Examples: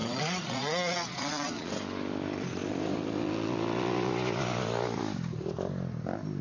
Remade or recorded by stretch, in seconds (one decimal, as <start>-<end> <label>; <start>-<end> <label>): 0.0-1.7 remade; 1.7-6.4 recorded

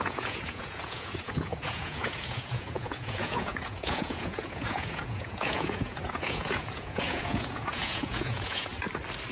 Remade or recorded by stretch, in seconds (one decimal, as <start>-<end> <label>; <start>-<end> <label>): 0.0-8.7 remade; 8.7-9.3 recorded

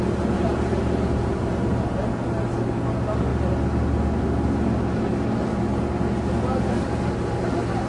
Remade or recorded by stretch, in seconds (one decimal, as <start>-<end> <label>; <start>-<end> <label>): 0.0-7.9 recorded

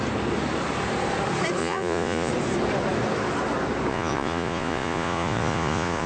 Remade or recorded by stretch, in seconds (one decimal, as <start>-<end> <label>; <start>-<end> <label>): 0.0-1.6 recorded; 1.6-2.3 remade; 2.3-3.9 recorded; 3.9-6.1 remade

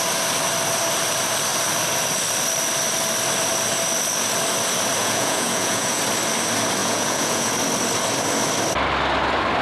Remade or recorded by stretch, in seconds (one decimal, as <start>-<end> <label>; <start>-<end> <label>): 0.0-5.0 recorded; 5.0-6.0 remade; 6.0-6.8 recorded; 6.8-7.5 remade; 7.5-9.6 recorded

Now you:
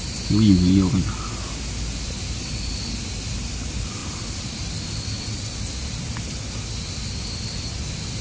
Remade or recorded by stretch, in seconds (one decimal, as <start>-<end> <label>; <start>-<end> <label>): 0.0-8.2 recorded

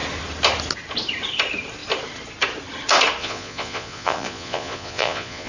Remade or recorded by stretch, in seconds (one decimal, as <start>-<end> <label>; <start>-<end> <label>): 0.0-3.2 recorded; 3.2-5.5 remade